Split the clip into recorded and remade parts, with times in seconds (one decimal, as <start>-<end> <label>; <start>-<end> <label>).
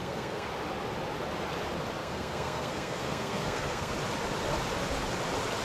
0.0-0.5 remade; 0.5-2.0 recorded; 2.0-3.9 remade; 3.9-5.6 recorded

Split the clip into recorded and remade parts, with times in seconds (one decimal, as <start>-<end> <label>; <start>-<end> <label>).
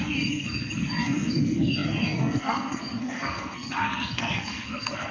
0.0-5.1 remade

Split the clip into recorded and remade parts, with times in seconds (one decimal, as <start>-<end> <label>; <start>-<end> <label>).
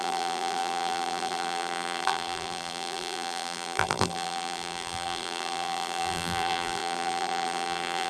0.0-8.1 remade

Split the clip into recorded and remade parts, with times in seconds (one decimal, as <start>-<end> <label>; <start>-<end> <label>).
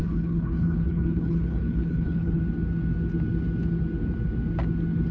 0.0-2.4 remade; 2.4-5.1 recorded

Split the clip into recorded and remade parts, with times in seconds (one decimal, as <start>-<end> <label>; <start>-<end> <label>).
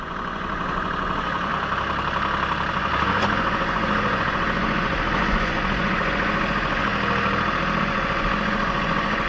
0.0-1.5 remade; 1.5-2.7 recorded; 2.7-6.9 remade; 6.9-7.8 recorded; 7.8-9.3 remade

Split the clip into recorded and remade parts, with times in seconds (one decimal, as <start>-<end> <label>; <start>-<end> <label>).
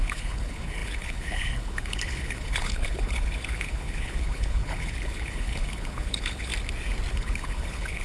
0.0-6.5 remade; 6.5-7.1 recorded; 7.1-8.0 remade